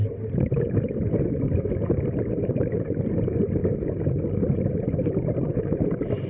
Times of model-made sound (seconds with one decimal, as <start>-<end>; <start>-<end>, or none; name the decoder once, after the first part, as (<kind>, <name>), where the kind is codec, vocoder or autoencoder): 0.0-2.6 (vocoder, BigVGAN v2)